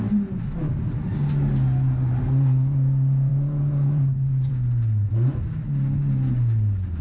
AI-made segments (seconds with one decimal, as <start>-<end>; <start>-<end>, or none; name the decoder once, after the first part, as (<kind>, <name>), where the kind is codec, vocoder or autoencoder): 3.3-4.5 (vocoder, BigVGAN v2)